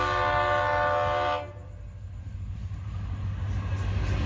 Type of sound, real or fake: real